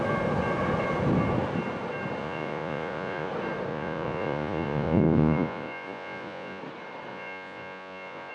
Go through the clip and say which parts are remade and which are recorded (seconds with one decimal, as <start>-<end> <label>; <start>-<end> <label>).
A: 0.0-2.2 recorded; 2.2-3.3 remade; 3.3-3.7 recorded; 3.7-6.6 remade; 6.6-7.1 recorded; 7.1-8.3 remade